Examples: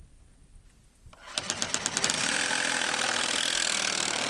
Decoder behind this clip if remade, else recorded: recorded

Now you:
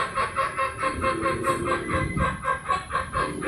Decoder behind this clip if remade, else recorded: recorded